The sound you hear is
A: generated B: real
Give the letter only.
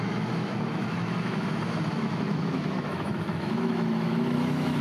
A